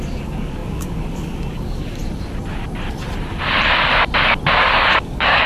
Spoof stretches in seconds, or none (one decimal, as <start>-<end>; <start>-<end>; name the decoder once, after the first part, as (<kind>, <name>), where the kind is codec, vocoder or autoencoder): 0.0-2.0 (codec, DAC); 4.6-5.5